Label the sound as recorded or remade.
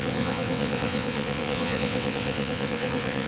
remade